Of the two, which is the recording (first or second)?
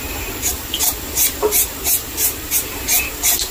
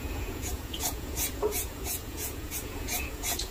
first